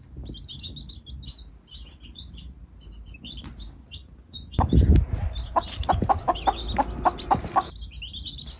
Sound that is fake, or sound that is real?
real